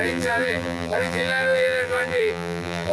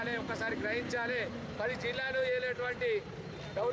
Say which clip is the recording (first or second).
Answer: second